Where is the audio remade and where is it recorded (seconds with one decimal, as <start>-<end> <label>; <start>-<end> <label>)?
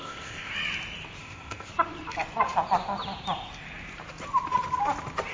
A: 0.0-0.5 remade; 0.5-1.2 recorded; 1.2-1.7 remade; 1.7-5.3 recorded